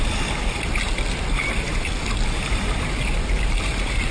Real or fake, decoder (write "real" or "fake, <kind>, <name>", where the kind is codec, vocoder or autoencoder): real